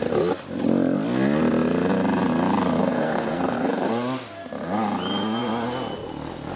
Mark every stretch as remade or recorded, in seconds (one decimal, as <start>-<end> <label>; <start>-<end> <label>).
0.0-2.8 recorded; 2.8-3.9 remade; 3.9-6.6 recorded